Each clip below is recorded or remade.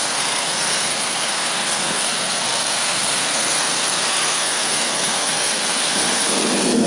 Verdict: remade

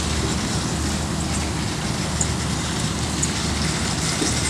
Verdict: recorded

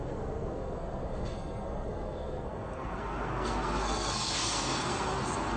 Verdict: remade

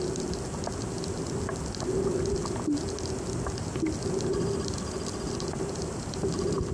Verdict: recorded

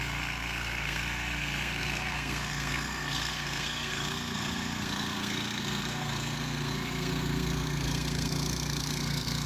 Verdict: remade